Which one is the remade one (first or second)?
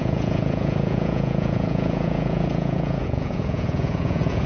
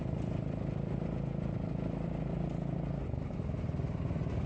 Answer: first